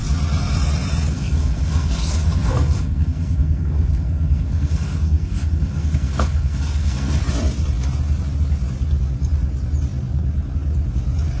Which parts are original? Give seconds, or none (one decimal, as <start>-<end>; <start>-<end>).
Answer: 0.0-1.1; 7.2-11.4